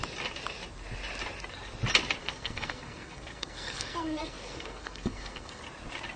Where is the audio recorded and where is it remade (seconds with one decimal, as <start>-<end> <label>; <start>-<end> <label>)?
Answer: 0.0-2.2 recorded; 2.2-5.6 remade; 5.6-6.2 recorded